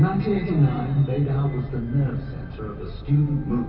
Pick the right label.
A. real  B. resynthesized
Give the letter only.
A